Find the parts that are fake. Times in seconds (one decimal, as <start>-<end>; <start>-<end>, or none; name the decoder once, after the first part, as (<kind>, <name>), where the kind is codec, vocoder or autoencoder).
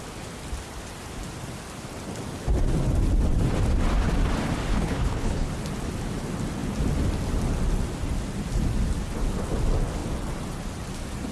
4.7-5.5 (codec, HILCodec)